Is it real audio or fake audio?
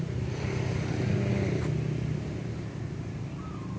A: real